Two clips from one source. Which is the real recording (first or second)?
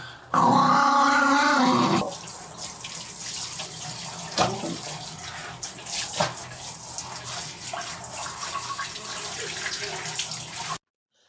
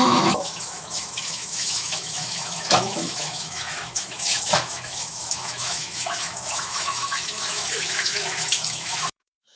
first